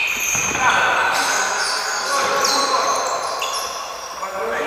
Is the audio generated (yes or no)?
no